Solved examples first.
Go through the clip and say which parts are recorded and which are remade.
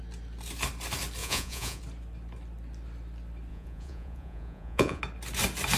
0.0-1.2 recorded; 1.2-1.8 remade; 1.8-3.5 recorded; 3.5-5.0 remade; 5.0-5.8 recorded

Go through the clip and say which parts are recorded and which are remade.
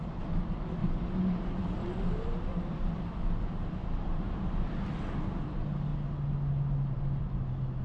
0.0-0.8 recorded; 0.8-1.5 remade; 1.5-2.5 recorded; 2.5-3.2 remade; 3.2-3.8 recorded; 3.8-4.6 remade; 4.6-7.8 recorded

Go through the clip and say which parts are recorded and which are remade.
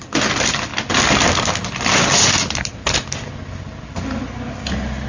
0.0-5.1 recorded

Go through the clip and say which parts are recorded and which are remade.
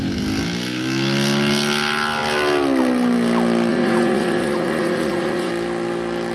0.0-3.7 recorded; 3.7-5.5 remade; 5.5-6.3 recorded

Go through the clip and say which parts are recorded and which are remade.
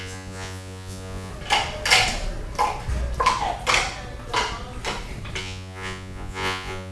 0.0-1.3 remade; 1.3-5.4 recorded; 5.4-6.9 remade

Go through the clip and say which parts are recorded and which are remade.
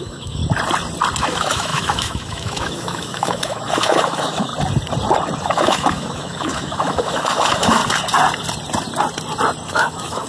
0.0-0.4 remade; 0.4-1.2 recorded; 1.2-4.5 remade; 4.5-5.4 recorded; 5.4-7.8 remade; 7.8-9.7 recorded; 9.7-10.3 remade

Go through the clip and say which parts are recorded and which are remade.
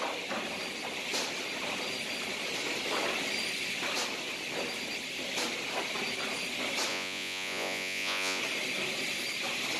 0.0-6.9 recorded; 6.9-8.4 remade; 8.4-9.8 recorded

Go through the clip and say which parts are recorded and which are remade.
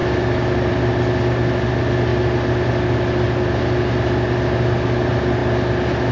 0.0-6.1 recorded